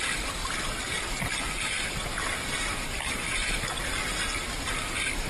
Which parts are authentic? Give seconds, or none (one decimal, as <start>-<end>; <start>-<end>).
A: 0.0-0.4; 3.6-5.3